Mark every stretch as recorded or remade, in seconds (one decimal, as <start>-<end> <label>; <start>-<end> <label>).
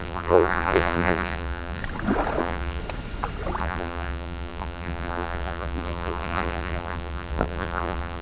0.0-1.8 remade; 1.8-2.4 recorded; 2.4-2.8 remade; 2.8-3.6 recorded; 3.6-8.2 remade